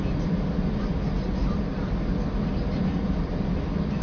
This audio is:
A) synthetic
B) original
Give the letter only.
B